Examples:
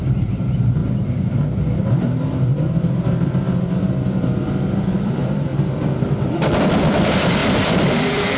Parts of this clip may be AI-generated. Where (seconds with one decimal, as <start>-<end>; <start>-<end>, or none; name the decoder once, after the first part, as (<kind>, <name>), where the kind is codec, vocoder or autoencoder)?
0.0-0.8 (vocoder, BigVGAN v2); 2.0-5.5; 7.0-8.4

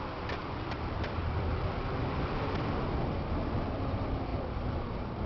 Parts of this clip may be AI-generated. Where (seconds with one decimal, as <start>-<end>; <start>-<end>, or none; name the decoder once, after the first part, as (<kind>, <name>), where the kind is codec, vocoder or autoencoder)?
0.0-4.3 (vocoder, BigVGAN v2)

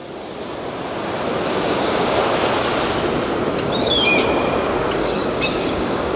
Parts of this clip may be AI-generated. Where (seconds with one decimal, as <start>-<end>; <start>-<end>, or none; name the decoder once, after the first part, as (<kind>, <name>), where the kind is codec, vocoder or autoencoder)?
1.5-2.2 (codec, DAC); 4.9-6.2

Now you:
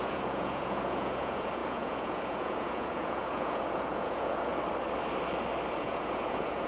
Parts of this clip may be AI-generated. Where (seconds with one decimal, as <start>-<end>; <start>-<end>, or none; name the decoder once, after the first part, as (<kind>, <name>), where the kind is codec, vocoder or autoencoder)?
0.0-4.5 (vocoder, Vocos); 5.8-6.7

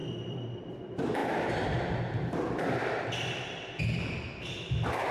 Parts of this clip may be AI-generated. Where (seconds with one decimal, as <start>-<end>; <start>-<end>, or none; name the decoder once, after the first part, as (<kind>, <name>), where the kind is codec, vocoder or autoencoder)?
none

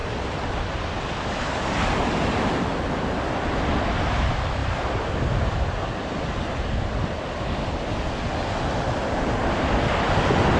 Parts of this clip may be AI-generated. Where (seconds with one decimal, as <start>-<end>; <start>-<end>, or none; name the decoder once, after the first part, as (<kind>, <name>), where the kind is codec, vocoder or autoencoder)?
4.6-5.1 (vocoder, BigVGAN v2)